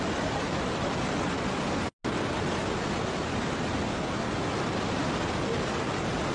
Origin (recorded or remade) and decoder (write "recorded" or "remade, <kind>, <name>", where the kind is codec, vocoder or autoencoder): recorded